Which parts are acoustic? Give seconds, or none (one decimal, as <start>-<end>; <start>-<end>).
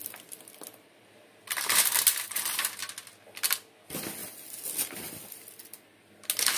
0.0-4.2; 6.1-6.6